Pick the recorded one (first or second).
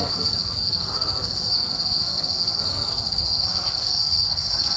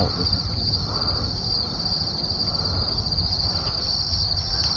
second